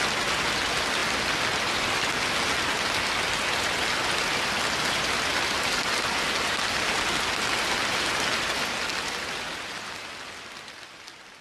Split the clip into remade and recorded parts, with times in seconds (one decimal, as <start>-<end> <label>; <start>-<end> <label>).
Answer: 0.0-11.4 recorded